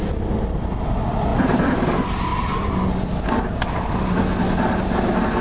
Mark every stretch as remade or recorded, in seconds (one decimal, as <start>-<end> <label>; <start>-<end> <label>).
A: 0.0-5.4 recorded